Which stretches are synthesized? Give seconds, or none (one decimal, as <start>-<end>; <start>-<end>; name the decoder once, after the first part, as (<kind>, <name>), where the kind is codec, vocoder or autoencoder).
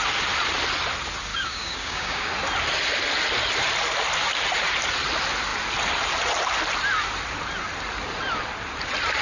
1.3-2.3 (codec, DAC)